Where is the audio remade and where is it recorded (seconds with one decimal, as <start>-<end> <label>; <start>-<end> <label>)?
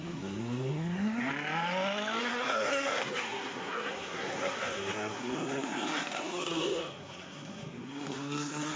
0.0-1.3 remade; 1.3-2.2 recorded; 2.2-8.8 remade